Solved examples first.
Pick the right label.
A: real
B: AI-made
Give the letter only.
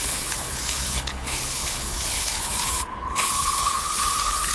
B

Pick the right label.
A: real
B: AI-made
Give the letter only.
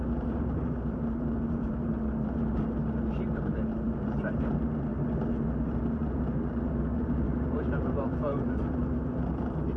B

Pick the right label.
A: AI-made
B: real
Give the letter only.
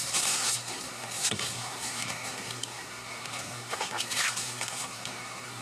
A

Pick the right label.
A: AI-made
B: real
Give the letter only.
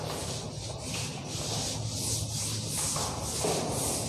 B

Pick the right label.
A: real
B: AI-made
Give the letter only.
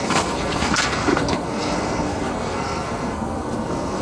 B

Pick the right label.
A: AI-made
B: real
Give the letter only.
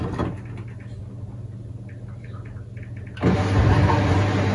B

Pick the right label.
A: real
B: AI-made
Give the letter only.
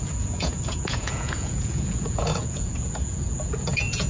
B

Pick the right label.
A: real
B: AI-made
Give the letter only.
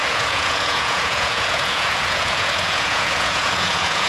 B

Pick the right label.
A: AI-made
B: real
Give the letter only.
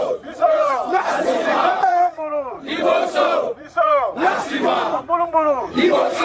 A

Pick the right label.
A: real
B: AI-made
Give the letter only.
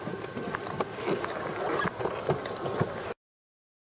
A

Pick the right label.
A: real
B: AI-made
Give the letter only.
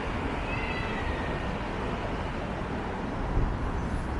A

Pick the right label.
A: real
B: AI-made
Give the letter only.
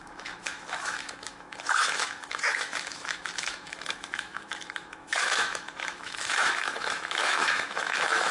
B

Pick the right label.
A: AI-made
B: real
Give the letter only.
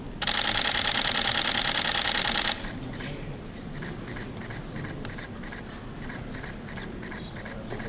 A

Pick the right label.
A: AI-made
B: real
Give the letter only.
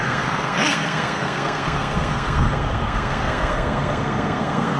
A